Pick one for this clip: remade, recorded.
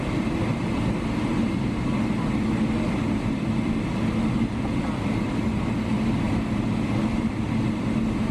recorded